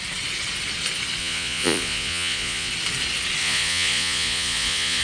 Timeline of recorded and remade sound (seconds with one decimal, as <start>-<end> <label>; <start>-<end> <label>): 0.0-1.2 recorded; 1.2-2.7 remade; 2.7-3.4 recorded; 3.4-5.0 remade